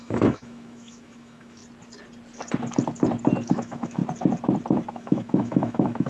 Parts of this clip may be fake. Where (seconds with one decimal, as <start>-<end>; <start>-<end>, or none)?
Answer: 0.0-1.6; 3.5-4.0; 4.9-6.1